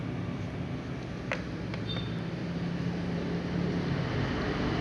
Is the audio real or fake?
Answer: real